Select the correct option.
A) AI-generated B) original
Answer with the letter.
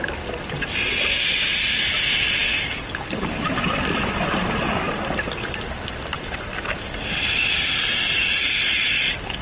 B